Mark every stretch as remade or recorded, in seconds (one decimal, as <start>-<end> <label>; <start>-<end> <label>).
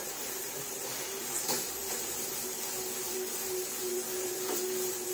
0.0-5.1 remade